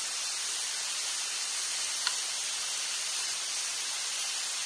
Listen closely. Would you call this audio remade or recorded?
recorded